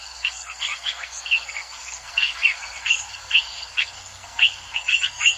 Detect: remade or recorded remade